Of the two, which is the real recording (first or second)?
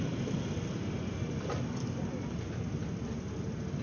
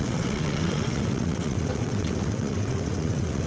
first